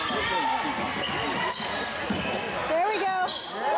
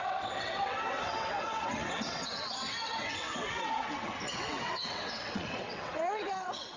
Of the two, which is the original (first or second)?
first